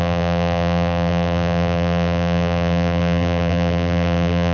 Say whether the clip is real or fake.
fake